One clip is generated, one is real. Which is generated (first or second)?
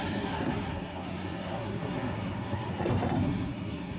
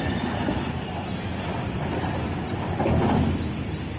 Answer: first